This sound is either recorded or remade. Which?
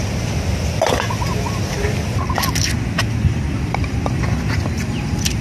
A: recorded